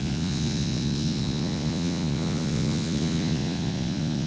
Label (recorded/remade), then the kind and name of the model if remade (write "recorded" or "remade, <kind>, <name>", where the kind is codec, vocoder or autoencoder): remade, vocoder, Vocos